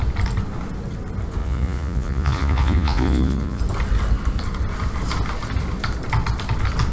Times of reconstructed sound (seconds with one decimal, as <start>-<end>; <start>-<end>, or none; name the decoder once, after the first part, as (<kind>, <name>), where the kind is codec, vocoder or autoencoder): 1.4-3.6 (vocoder, Vocos)

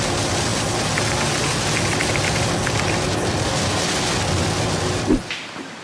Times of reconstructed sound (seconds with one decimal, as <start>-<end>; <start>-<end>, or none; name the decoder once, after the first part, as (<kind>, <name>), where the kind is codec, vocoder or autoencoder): none